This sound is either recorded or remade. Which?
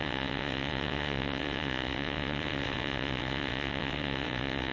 remade